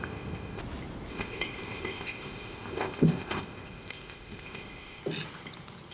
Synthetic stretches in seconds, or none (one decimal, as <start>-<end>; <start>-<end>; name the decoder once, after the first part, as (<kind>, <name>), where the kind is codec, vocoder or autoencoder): 0.0-0.6 (codec, ZipCodec); 1.1-5.0